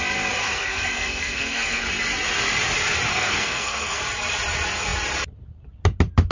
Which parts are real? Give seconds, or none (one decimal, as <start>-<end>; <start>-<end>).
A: 0.0-0.4; 1.8-3.1; 4.0-6.3